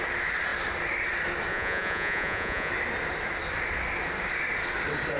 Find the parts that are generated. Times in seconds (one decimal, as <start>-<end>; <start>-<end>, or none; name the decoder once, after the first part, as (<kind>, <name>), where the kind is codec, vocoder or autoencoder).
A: 1.5-2.7 (vocoder, Vocos)